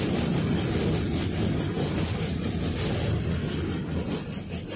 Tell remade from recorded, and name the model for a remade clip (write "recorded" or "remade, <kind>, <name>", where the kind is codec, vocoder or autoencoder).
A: recorded